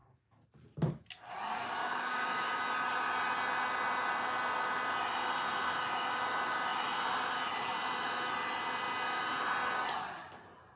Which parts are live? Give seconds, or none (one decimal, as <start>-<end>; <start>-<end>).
0.0-1.8; 2.5-10.8